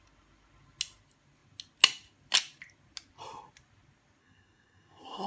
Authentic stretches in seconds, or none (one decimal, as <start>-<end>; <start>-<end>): 0.0-4.2